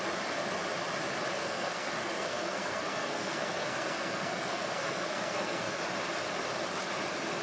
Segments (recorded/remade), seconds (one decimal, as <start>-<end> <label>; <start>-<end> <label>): 0.0-1.4 recorded; 1.4-5.8 remade; 5.8-7.4 recorded